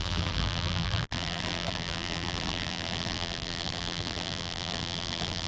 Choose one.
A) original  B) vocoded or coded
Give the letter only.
B